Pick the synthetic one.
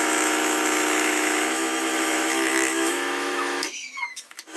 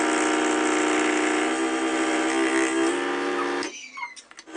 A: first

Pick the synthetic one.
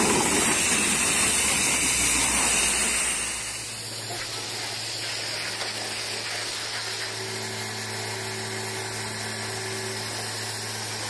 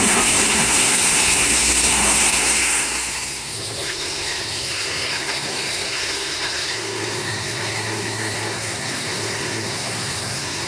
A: second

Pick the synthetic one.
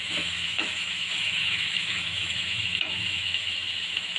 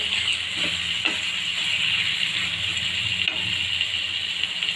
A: first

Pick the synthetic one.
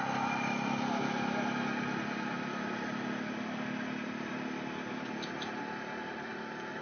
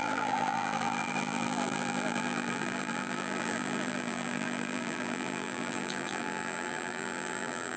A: second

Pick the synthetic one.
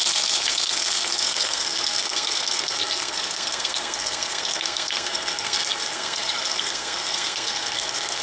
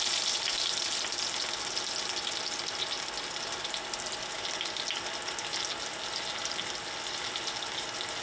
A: first